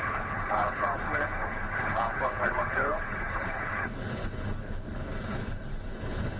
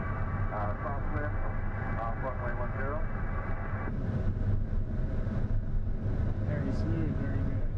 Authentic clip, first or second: second